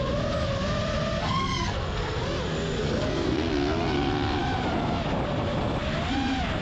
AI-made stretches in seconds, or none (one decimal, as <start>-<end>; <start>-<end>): 1.2-2.2; 2.8-3.5